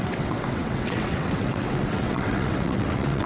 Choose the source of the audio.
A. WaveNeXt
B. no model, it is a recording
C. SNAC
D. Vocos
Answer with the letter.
A